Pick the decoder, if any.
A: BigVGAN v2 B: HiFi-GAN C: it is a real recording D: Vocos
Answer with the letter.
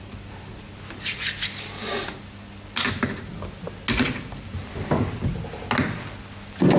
C